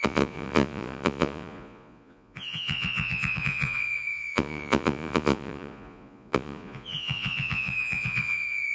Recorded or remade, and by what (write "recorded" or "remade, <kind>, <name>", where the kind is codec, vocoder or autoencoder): remade, vocoder, Vocos